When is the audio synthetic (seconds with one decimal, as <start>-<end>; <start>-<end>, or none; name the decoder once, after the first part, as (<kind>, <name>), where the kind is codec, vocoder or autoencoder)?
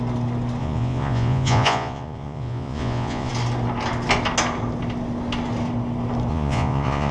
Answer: 0.6-3.3 (vocoder, Vocos); 6.3-7.1